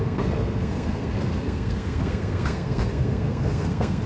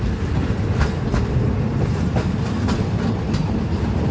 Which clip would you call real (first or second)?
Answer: second